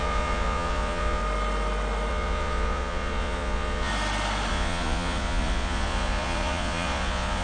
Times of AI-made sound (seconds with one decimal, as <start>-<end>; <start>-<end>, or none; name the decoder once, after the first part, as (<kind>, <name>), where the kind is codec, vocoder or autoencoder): 0.0-1.2 (vocoder, Vocos); 2.1-3.9; 4.5-7.4